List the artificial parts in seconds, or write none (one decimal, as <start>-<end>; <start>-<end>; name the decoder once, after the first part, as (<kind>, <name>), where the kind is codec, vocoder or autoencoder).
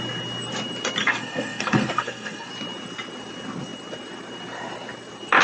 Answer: 1.0-2.5 (codec, SNAC)